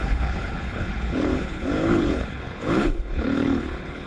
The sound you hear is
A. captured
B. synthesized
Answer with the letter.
B